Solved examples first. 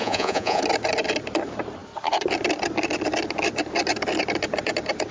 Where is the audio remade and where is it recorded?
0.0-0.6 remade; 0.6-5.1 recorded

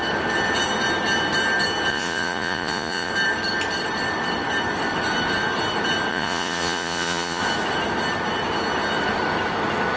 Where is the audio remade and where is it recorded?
0.0-1.9 recorded; 1.9-3.1 remade; 3.1-6.1 recorded; 6.1-7.4 remade; 7.4-10.0 recorded

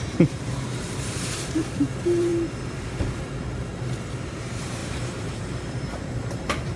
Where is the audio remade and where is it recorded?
0.0-2.3 remade; 2.3-4.2 recorded; 4.2-6.8 remade

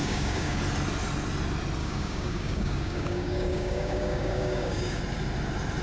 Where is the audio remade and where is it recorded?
0.0-0.6 remade; 0.6-1.8 recorded; 1.8-5.0 remade; 5.0-5.8 recorded

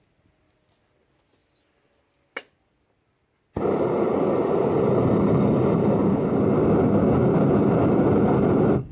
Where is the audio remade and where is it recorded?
0.0-5.8 recorded; 5.8-6.4 remade; 6.4-8.9 recorded

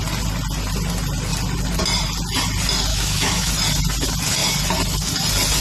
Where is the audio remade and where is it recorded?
0.0-2.9 recorded; 2.9-3.5 remade; 3.5-5.6 recorded